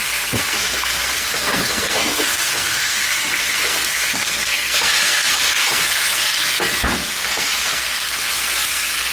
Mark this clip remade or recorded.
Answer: remade